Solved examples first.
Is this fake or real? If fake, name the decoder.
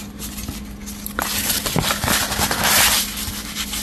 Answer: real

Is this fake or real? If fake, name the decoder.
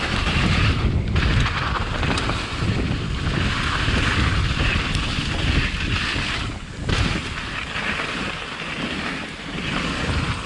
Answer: real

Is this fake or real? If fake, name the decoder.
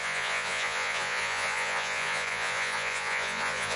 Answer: fake, vocoder, Vocos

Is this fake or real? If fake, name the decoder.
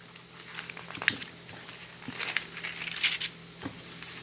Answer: real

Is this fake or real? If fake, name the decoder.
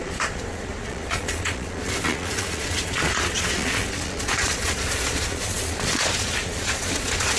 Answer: fake, vocoder, Vocos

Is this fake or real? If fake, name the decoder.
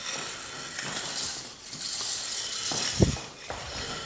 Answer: real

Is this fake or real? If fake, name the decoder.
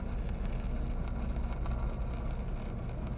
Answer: real